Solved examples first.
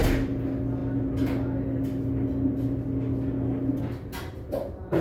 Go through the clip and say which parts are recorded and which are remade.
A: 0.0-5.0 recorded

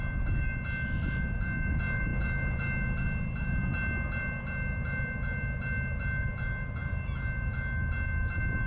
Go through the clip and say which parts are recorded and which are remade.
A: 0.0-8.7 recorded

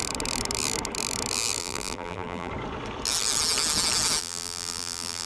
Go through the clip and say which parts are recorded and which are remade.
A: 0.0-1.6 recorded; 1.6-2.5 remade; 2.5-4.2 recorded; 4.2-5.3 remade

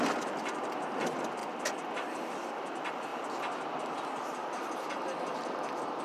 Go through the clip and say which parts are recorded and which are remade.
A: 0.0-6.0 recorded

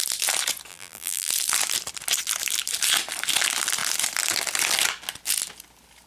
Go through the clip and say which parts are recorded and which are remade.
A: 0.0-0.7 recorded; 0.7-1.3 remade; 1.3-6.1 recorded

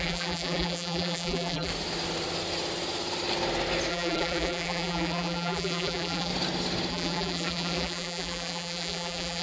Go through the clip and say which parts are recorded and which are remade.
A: 0.0-1.7 remade; 1.7-3.9 recorded; 3.9-6.3 remade; 6.3-6.9 recorded; 6.9-9.4 remade